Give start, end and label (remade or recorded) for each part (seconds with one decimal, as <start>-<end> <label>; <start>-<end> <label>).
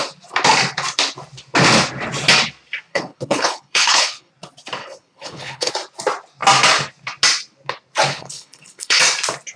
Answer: 0.0-2.9 recorded; 2.9-4.3 remade; 4.3-4.8 recorded; 4.8-5.7 remade; 5.7-8.1 recorded; 8.1-9.0 remade; 9.0-9.6 recorded